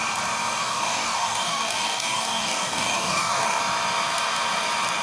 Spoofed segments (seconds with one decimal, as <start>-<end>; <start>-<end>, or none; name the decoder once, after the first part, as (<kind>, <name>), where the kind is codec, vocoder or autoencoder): 0.6-3.6 (codec, DAC)